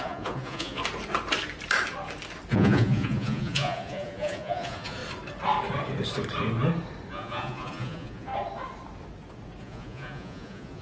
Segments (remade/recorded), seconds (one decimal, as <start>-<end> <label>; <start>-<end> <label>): 0.0-0.8 remade; 0.8-2.5 recorded; 2.5-5.0 remade; 5.0-7.1 recorded; 7.1-8.3 remade; 8.3-9.6 recorded; 9.6-10.8 remade